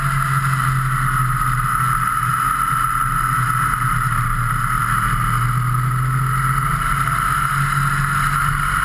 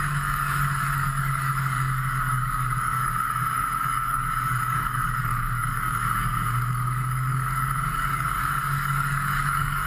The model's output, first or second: second